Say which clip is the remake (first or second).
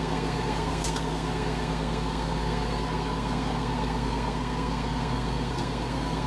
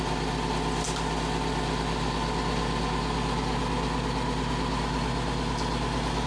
first